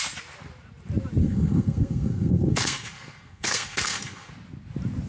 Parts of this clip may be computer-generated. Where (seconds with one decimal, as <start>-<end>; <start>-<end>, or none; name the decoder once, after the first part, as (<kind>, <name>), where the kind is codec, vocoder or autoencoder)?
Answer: 1.2-4.3 (codec, SNAC)